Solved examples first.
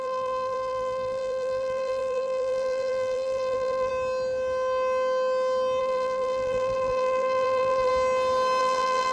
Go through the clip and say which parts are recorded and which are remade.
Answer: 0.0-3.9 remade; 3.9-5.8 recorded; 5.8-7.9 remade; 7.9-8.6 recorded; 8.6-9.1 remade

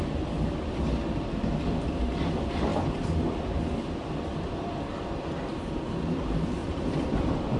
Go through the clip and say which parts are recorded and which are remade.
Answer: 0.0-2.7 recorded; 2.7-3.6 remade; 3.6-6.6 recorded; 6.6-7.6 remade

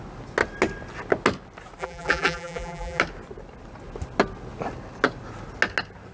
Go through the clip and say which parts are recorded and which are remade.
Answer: 0.0-1.8 recorded; 1.8-3.0 remade; 3.0-6.1 recorded